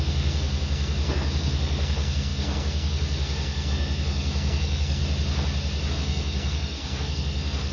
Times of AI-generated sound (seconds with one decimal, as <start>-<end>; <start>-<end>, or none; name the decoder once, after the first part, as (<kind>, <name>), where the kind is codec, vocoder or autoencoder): 0.0-5.0 (codec, SNAC); 5.9-7.7